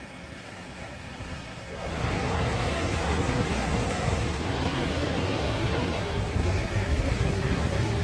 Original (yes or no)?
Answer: no